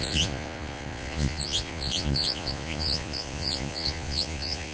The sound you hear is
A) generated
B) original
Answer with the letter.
A